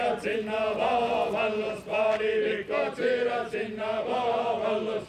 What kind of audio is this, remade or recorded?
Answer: recorded